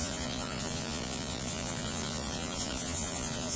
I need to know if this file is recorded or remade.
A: remade